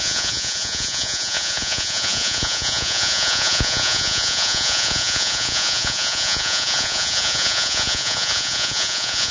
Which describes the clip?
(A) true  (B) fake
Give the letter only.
B